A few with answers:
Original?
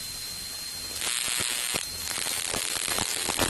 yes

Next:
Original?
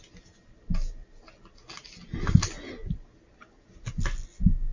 yes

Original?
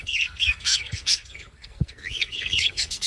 no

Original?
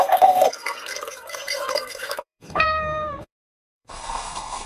no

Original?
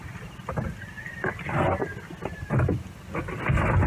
yes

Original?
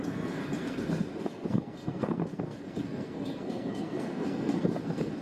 no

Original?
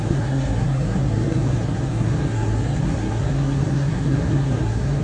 no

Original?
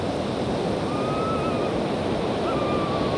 yes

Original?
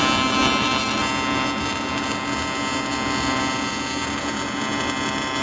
yes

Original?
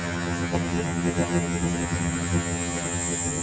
no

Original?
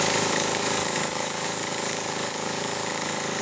no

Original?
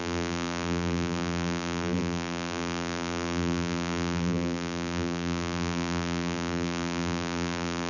no